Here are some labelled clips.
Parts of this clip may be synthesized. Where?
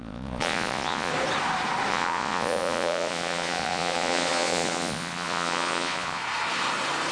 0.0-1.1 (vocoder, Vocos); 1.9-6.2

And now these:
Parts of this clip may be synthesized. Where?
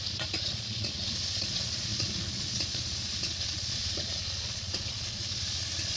0.0-6.0 (vocoder, Vocos)